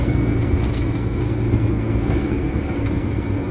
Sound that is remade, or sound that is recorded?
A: remade